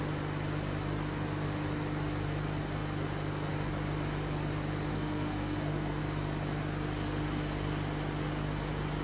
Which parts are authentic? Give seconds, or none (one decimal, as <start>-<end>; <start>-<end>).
0.0-4.9; 6.0-9.0